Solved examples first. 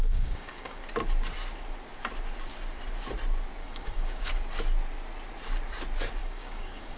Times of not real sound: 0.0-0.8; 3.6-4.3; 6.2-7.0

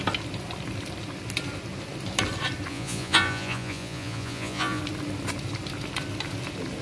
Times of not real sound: 2.7-4.8

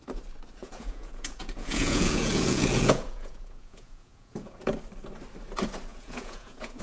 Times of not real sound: 0.6-4.7; 5.9-6.8

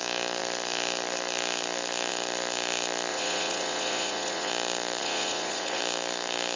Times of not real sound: 3.1-4.5; 5.0-5.8

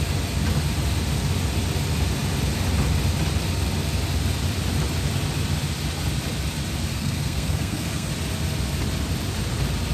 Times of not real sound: 6.9-8.1

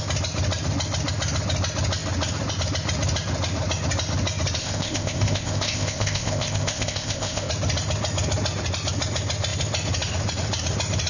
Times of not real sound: 4.6-7.5

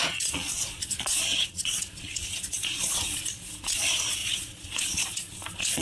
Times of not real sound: 0.0-5.8

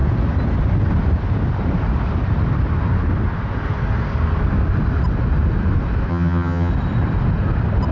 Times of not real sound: 6.1-6.7